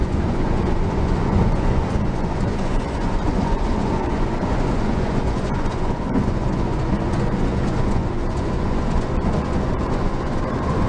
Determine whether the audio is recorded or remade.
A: remade